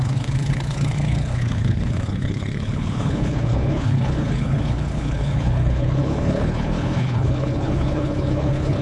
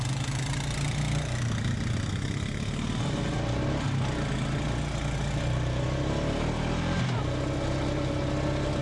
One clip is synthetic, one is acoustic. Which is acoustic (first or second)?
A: second